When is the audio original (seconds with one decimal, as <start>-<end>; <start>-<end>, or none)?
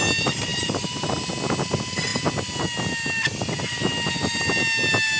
0.0-0.5; 1.3-5.2